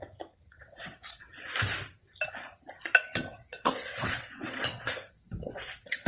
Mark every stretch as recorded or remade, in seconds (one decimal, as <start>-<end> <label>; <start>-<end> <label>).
0.0-0.4 recorded; 0.4-1.3 remade; 1.3-3.3 recorded; 3.3-6.1 remade